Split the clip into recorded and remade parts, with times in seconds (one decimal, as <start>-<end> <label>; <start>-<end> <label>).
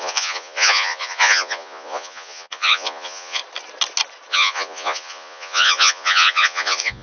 0.0-3.4 remade; 3.4-4.3 recorded; 4.3-7.0 remade